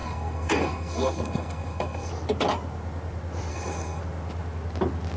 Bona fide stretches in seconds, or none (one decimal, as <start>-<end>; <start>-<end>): 2.1-3.5; 4.0-5.2